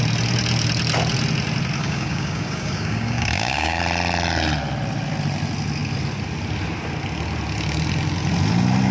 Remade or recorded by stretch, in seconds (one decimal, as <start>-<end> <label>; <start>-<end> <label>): 0.0-1.8 recorded; 1.8-3.8 remade; 3.8-8.9 recorded